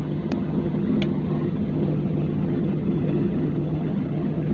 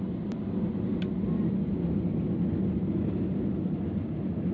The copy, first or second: first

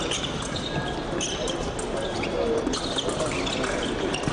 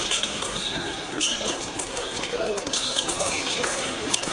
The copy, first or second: second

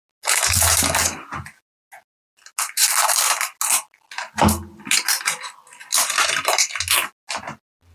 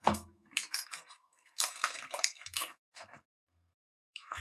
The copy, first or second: second